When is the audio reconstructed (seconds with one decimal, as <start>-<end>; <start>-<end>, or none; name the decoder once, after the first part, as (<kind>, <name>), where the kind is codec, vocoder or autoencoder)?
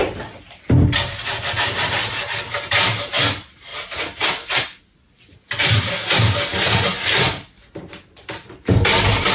none